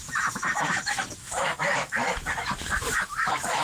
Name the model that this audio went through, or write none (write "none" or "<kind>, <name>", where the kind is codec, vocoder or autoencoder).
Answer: autoencoder, DAC-VAE